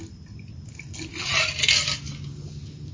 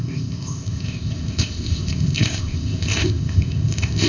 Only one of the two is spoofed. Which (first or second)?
second